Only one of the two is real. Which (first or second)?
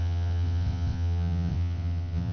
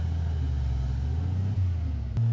second